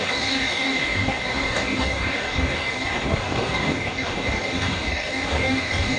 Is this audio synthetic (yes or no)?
yes